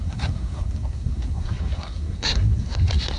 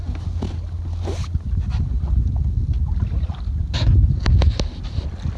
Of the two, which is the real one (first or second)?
second